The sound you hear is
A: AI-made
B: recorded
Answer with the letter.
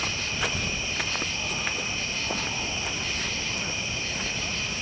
B